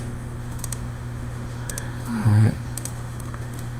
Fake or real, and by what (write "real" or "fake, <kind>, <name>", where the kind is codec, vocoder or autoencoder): fake, autoencoder, DAC-VAE